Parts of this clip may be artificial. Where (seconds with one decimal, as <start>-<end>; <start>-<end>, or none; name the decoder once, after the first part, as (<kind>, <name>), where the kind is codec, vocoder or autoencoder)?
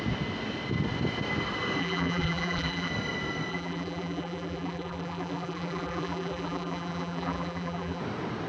1.8-2.9 (vocoder, BigVGAN v2); 3.5-8.0